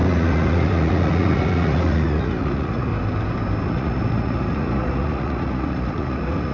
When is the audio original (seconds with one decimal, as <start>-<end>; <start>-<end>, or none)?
2.9-3.7

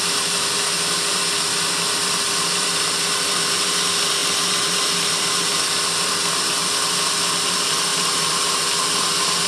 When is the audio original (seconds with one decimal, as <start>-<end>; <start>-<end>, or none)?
0.0-9.5

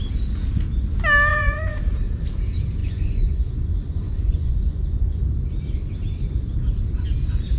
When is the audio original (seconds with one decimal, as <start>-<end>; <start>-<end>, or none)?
0.0-1.3; 1.8-2.8; 5.2-7.6

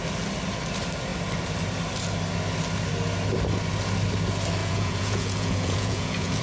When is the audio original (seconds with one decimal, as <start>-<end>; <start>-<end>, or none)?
0.0-4.6

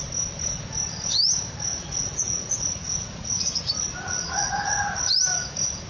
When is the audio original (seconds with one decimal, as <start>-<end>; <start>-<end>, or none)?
0.0-1.7; 5.1-5.9